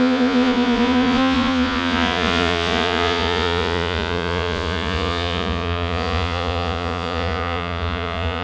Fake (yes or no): yes